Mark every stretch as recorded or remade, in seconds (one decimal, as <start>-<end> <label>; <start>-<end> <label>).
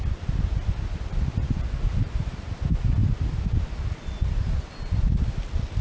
0.0-5.8 recorded